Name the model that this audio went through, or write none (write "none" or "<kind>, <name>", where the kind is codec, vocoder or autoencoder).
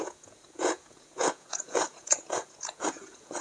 vocoder, Vocos